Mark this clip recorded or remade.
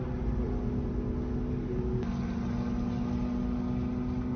recorded